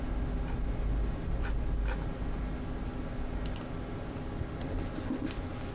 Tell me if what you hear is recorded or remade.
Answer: recorded